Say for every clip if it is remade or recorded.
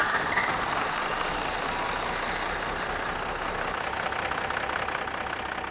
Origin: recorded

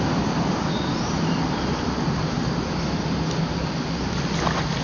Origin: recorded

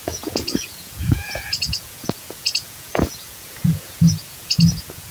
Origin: remade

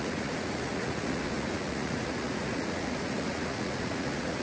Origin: remade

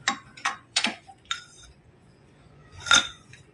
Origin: remade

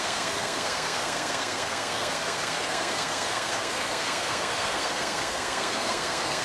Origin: remade